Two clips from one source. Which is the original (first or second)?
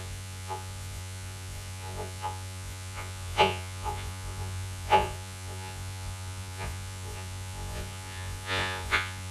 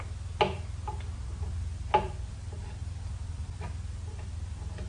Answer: second